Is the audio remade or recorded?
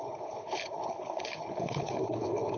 remade